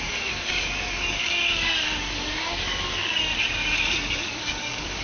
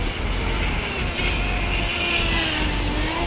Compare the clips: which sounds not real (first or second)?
first